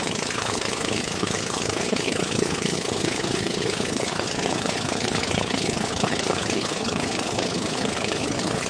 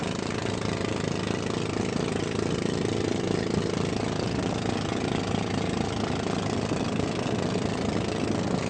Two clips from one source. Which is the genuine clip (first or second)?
second